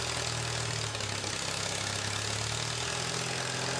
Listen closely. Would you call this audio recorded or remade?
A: recorded